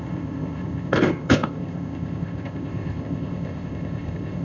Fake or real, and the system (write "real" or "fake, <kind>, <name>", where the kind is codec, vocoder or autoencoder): fake, codec, ZipCodec